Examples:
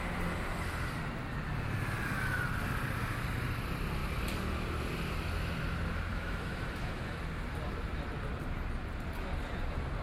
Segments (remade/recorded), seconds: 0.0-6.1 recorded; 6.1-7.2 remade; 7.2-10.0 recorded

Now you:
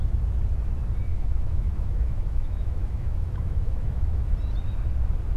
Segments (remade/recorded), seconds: 0.0-1.1 recorded; 1.1-4.3 remade; 4.3-5.4 recorded

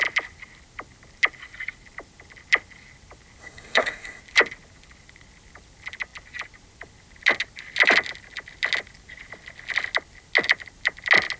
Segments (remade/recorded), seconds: 0.0-3.4 recorded; 3.4-4.2 remade; 4.2-11.4 recorded

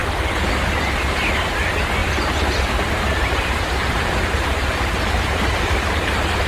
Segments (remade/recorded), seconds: 0.0-2.0 recorded; 2.0-5.8 remade; 5.8-6.5 recorded

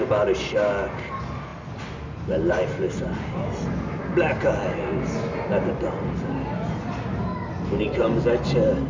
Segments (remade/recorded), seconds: 0.0-8.9 recorded

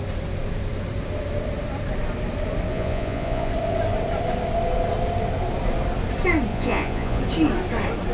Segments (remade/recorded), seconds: 0.0-2.7 recorded; 2.7-3.5 remade; 3.5-6.5 recorded; 6.5-7.2 remade; 7.2-8.1 recorded